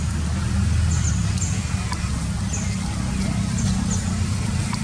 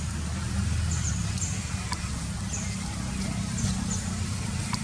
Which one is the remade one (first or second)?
second